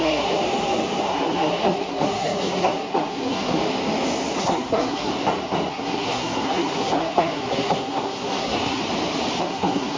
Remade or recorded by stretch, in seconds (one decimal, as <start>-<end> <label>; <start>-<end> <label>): 0.0-0.4 remade; 0.4-1.0 recorded; 1.0-3.6 remade; 3.6-4.4 recorded; 4.4-5.1 remade; 5.1-5.7 recorded; 5.7-8.8 remade; 8.8-9.4 recorded; 9.4-10.0 remade

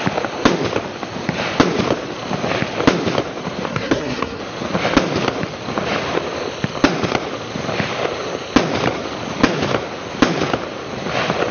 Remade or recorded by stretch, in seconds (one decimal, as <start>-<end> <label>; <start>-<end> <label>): 0.0-3.7 recorded; 3.7-4.4 remade; 4.4-11.5 recorded